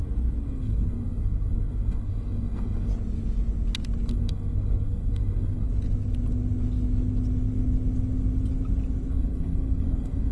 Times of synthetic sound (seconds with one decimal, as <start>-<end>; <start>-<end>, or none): 0.0-2.9; 4.1-5.7; 9.1-10.3